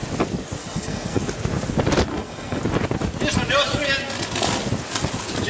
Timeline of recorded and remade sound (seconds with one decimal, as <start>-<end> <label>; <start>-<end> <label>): 0.0-0.6 recorded; 0.6-1.2 remade; 1.2-2.1 recorded; 2.1-2.6 remade; 2.6-5.5 recorded